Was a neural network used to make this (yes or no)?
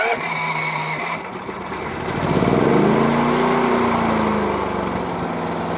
no